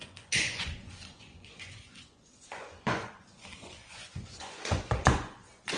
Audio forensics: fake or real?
fake